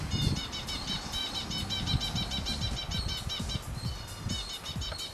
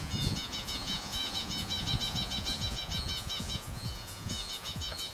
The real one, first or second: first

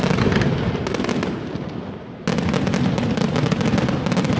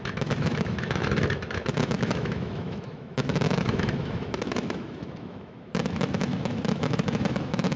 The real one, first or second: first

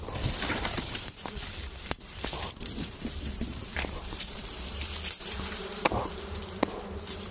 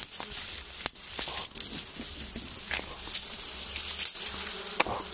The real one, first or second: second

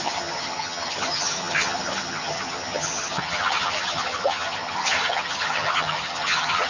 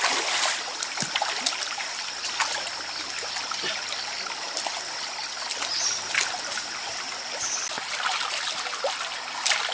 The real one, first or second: second